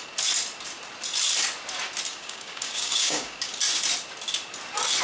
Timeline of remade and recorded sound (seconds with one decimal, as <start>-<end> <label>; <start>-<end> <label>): 0.0-2.1 recorded; 2.1-3.5 remade; 3.5-5.0 recorded